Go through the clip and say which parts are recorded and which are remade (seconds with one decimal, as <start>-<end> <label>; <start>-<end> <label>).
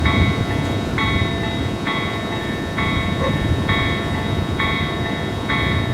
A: 0.0-0.9 remade; 0.9-1.6 recorded; 1.6-5.9 remade